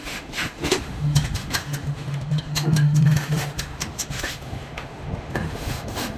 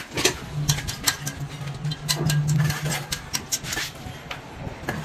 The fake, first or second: first